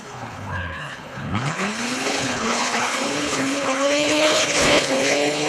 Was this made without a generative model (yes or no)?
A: no